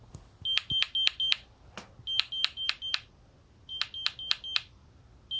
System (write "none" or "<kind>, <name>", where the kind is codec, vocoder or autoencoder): none